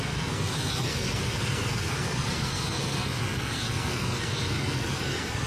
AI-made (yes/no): yes